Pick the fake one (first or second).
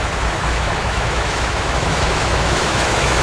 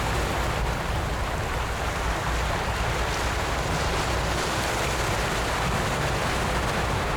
first